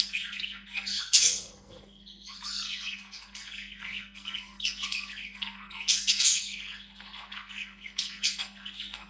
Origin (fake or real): fake